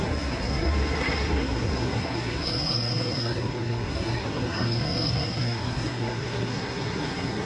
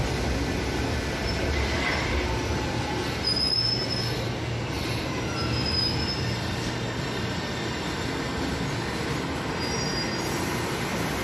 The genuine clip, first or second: second